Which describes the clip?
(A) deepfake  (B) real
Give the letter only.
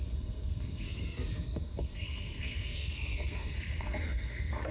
A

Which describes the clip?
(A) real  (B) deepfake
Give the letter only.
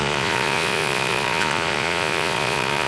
B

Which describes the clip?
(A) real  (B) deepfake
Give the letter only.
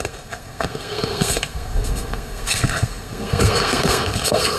B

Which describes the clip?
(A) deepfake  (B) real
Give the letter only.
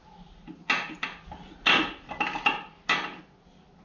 B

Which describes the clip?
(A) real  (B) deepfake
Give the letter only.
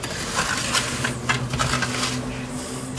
A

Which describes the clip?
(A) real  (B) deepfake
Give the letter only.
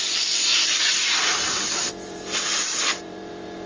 B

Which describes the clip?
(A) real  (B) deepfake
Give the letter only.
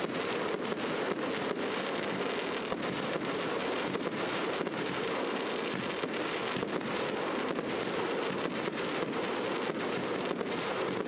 A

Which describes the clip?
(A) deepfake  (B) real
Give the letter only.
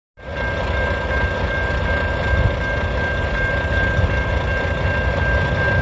B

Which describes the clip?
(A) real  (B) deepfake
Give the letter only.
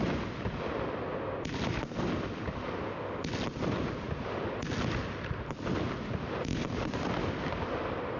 A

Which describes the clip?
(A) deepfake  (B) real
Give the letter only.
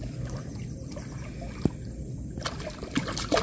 B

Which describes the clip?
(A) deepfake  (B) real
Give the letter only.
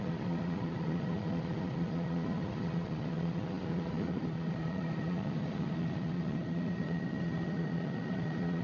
A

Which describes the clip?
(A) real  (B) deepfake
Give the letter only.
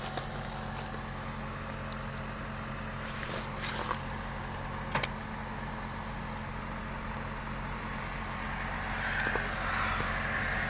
A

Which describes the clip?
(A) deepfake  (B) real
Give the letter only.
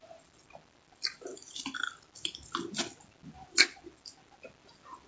B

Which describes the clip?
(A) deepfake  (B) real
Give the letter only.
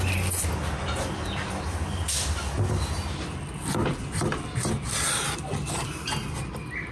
B